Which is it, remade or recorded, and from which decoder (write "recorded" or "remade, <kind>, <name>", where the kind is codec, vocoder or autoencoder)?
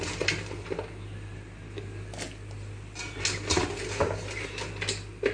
recorded